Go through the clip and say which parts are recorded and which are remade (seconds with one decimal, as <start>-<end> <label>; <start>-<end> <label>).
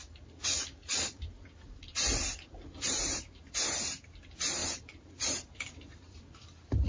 0.0-3.5 remade; 3.5-4.6 recorded; 4.6-6.2 remade; 6.2-6.9 recorded